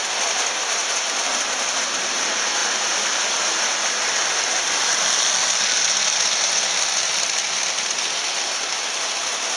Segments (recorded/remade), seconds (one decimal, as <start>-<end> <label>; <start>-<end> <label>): 0.0-0.8 recorded; 0.8-1.3 remade; 1.3-2.6 recorded; 2.6-3.2 remade; 3.2-9.6 recorded